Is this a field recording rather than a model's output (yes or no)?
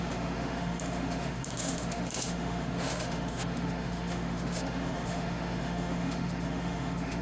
no